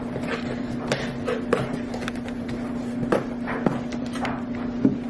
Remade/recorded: recorded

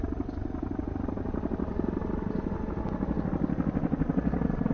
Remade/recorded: recorded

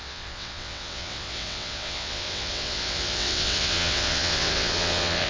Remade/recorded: remade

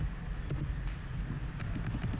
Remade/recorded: recorded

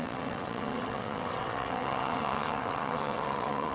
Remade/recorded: remade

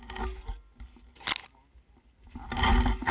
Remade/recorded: recorded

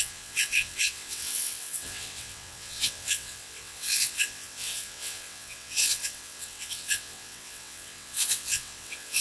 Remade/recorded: remade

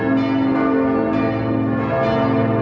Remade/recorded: recorded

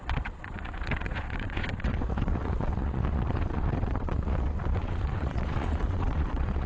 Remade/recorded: remade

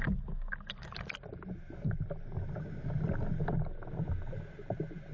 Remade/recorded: recorded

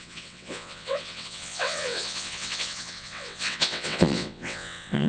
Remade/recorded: remade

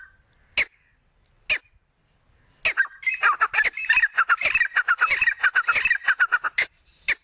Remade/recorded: recorded